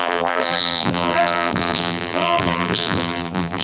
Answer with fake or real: fake